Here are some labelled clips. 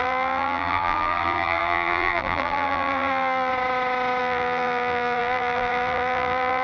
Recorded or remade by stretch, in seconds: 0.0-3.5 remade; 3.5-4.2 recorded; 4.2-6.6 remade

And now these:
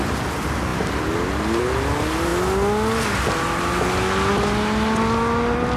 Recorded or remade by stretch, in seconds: 0.0-5.8 recorded

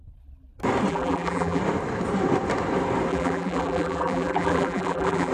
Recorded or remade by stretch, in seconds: 0.0-0.9 recorded; 0.9-1.6 remade; 1.6-3.1 recorded; 3.1-5.3 remade

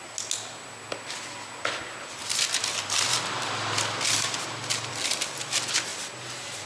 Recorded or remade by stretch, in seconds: 0.0-2.2 recorded; 2.2-4.9 remade; 4.9-5.9 recorded; 5.9-6.7 remade

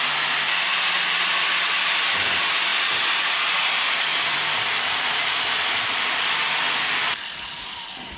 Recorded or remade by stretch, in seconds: 0.0-2.7 remade; 2.7-3.3 recorded; 3.3-8.2 remade

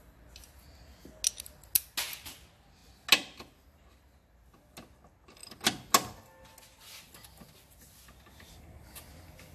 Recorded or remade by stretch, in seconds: 0.0-9.5 recorded